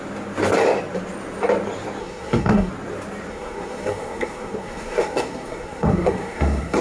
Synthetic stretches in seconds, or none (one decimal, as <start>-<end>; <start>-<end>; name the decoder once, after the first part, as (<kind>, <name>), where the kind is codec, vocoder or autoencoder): 2.0-2.7 (codec, SNAC); 3.3-6.8